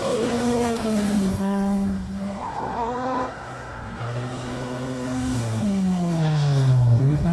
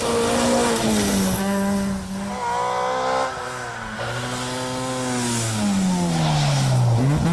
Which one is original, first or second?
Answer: second